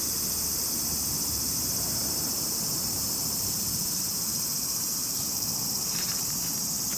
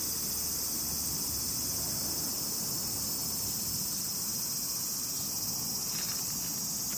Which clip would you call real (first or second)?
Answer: second